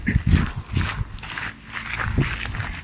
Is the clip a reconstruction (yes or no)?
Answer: no